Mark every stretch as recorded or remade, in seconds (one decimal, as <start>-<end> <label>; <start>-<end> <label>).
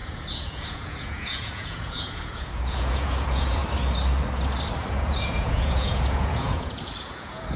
0.0-3.6 remade; 3.6-4.9 recorded; 4.9-7.6 remade